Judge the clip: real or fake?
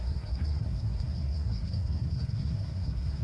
fake